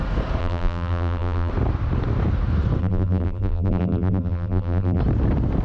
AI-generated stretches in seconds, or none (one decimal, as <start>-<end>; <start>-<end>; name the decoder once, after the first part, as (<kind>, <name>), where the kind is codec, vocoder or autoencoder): 0.4-1.5 (vocoder, BigVGAN v2); 2.8-5.0